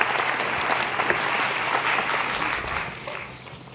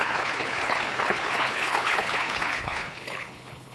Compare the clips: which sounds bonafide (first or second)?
first